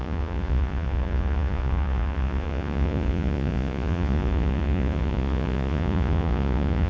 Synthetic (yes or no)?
yes